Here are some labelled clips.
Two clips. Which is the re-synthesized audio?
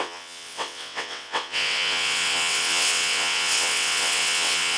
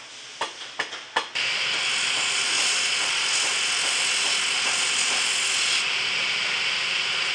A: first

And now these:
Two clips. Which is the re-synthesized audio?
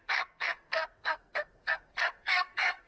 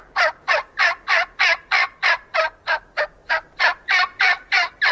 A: first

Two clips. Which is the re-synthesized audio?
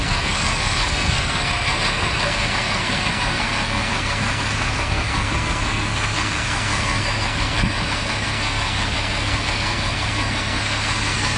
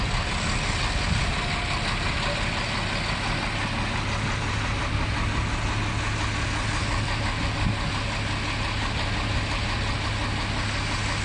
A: first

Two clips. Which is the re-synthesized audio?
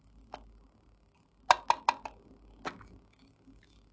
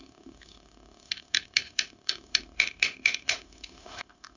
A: second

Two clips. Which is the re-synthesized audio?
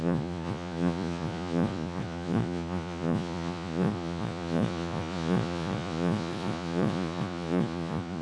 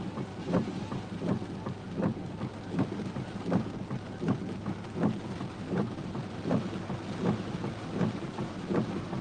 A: first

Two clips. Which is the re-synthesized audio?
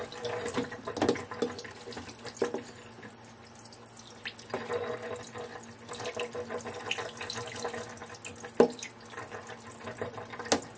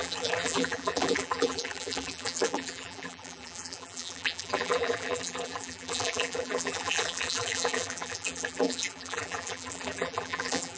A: second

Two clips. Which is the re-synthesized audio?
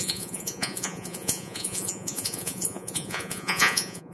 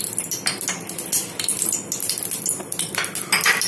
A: first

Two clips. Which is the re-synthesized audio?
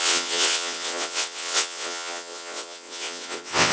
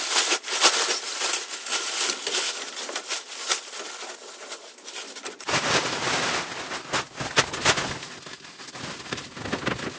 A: first